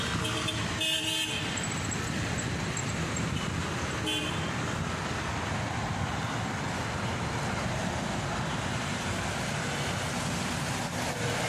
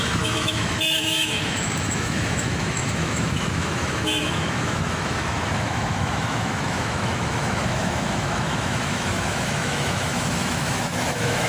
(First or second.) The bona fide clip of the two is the first